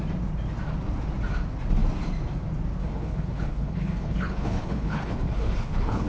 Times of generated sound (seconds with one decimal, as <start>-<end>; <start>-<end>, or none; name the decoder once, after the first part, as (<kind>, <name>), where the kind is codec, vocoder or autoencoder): 2.8-6.1 (codec, HILCodec)